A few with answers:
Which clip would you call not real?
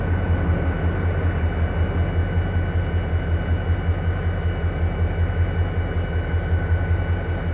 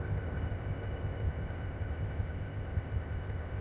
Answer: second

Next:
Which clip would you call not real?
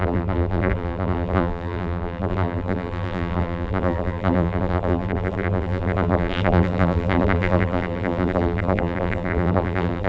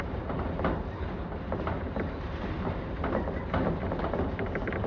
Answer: first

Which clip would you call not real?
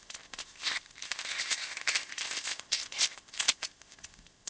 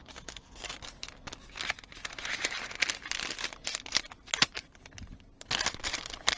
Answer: first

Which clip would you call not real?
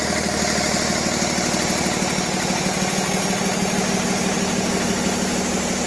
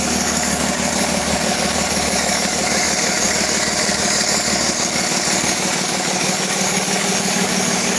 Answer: second